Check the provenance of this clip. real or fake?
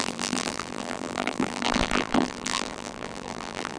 fake